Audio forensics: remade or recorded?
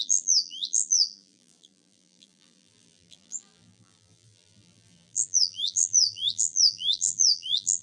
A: remade